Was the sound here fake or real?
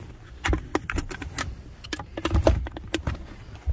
real